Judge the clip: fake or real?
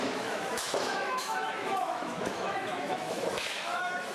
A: fake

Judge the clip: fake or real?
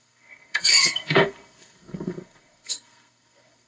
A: fake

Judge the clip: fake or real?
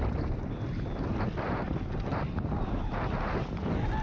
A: real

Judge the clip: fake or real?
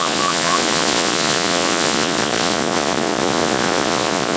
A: fake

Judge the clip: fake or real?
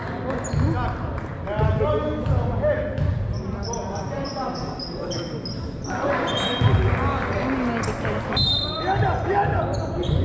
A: real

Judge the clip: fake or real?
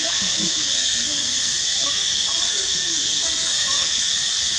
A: fake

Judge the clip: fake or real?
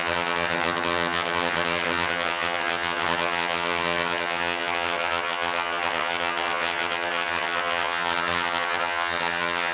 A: fake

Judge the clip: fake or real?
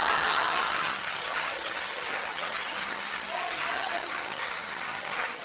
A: fake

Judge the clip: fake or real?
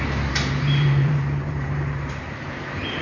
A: fake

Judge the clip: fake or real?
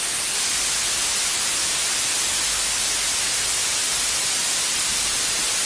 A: fake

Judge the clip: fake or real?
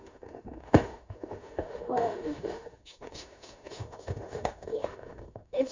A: fake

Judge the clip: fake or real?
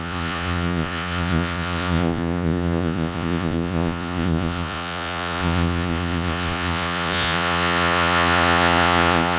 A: fake